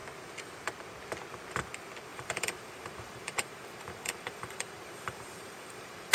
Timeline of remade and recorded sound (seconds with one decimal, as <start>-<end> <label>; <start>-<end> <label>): 0.0-2.1 recorded; 2.1-6.1 remade